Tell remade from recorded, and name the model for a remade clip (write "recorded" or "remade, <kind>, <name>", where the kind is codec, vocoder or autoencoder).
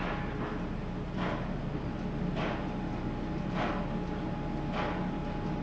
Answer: recorded